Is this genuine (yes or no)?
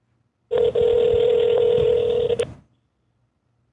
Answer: yes